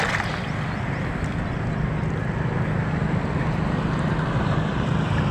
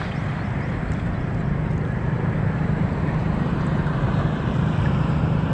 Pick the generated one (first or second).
second